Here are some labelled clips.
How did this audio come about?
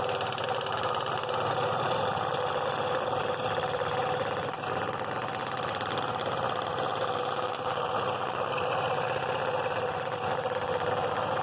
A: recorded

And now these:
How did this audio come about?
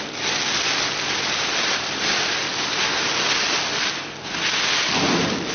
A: recorded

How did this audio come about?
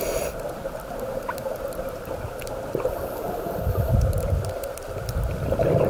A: remade